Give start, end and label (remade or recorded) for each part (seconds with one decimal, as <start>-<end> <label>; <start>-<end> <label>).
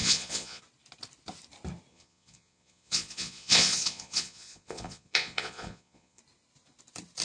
0.0-0.6 remade; 0.6-1.9 recorded; 1.9-6.2 remade; 6.2-7.2 recorded